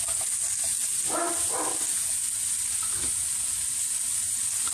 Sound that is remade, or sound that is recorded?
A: recorded